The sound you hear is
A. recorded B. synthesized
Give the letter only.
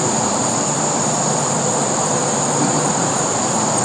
A